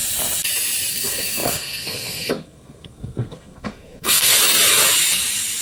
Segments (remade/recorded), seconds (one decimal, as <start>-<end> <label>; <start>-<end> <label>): 0.0-0.9 recorded; 0.9-4.3 remade; 4.3-5.6 recorded